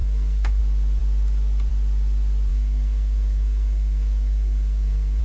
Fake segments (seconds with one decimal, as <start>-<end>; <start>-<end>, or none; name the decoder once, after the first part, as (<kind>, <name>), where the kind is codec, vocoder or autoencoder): 0.0-0.6 (codec, SNAC); 2.5-5.2